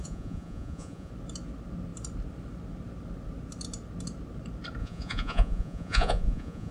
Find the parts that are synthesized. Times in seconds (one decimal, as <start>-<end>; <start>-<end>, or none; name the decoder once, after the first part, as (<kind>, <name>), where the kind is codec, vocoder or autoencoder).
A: 0.0-1.1 (vocoder, Vocos); 4.8-6.7